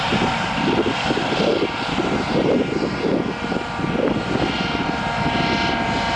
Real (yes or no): yes